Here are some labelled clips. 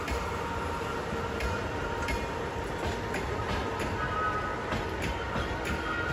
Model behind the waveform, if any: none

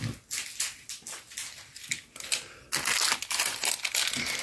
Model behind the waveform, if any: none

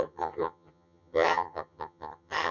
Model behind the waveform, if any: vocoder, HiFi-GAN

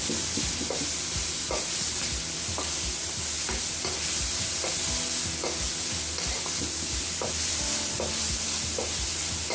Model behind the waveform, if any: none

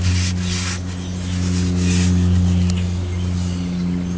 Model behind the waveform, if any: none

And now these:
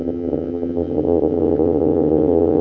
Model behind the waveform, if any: vocoder, HiFi-GAN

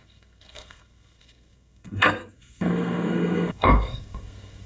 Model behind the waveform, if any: codec, SNAC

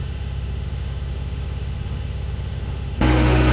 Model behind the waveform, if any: autoencoder, DAC-VAE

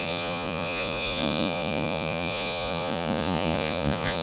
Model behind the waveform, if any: vocoder, Vocos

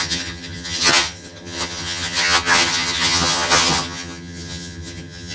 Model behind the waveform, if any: vocoder, HiFi-GAN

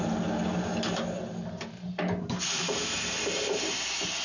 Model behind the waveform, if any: none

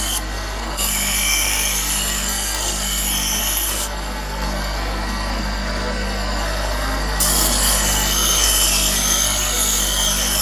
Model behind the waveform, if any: codec, SNAC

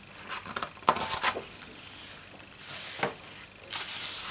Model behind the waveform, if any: none